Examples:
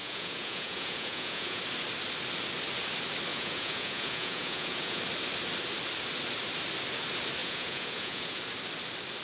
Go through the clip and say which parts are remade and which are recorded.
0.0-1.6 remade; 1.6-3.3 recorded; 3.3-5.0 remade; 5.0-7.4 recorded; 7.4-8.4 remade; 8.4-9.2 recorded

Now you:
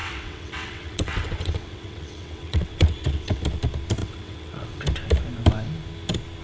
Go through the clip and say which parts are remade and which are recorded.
0.0-3.4 remade; 3.4-4.0 recorded; 4.0-4.9 remade; 4.9-6.4 recorded